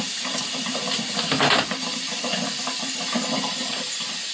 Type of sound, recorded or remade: remade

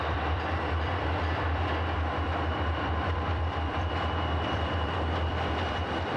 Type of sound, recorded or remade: remade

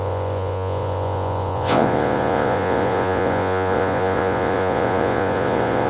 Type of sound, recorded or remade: remade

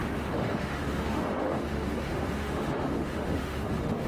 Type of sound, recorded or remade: remade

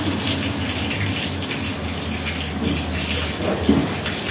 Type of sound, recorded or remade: recorded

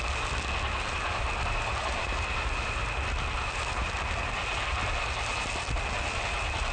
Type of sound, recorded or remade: recorded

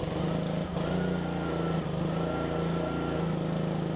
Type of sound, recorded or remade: recorded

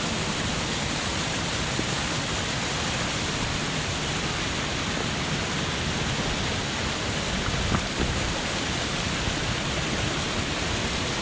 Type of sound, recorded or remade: recorded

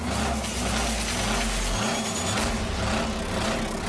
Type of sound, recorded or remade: recorded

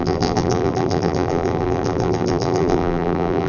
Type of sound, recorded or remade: remade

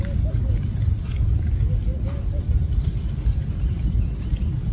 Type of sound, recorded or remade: recorded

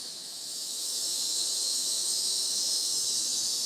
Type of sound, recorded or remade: remade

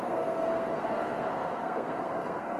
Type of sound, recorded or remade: remade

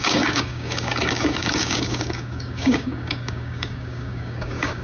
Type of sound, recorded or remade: remade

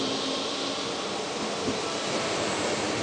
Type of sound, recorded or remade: recorded